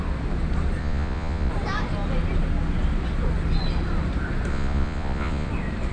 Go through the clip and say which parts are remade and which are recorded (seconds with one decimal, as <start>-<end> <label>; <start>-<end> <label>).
0.0-0.8 recorded; 0.8-1.5 remade; 1.5-4.5 recorded; 4.5-5.5 remade; 5.5-5.9 recorded